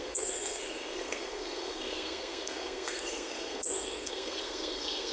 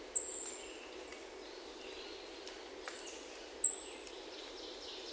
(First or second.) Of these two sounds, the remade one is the first